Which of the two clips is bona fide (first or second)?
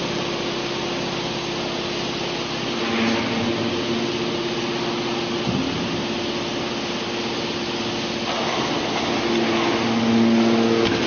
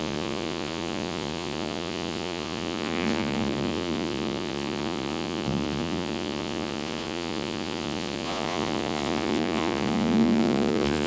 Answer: first